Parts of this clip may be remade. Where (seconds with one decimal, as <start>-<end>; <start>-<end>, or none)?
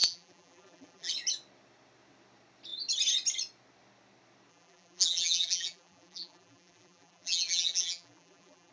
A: 0.0-1.1; 4.5-8.7